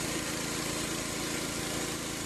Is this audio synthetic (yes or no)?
no